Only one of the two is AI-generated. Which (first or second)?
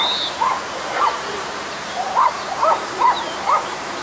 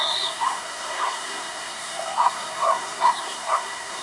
second